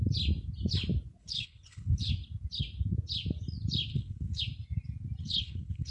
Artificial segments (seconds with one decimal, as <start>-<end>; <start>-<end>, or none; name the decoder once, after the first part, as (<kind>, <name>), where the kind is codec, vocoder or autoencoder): 1.2-2.1 (codec, HILCodec); 3.9-4.4; 5.2-5.9